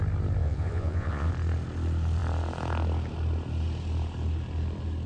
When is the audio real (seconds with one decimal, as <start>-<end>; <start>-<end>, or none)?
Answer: 0.0-0.4; 1.3-5.1